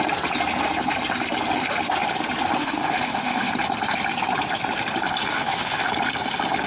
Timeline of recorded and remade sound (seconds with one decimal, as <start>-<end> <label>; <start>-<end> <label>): 0.0-2.6 recorded; 2.6-3.5 remade; 3.5-5.3 recorded; 5.3-5.9 remade; 5.9-6.7 recorded